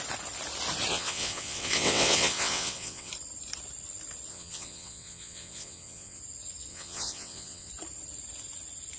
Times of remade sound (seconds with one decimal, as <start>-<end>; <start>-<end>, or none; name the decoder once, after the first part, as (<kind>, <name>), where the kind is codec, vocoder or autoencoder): 0.9-3.1 (vocoder, WaveNeXt); 4.3-6.2; 6.7-7.7